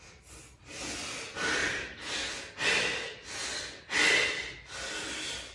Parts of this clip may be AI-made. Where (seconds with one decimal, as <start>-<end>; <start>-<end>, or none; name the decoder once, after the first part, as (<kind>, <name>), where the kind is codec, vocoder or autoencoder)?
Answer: none